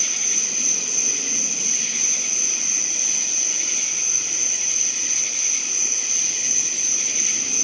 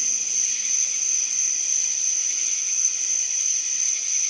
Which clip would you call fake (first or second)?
second